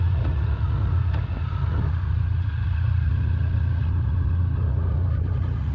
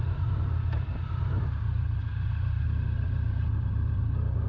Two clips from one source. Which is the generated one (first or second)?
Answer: first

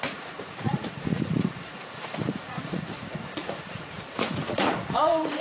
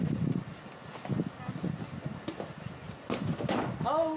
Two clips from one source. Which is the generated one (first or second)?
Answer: first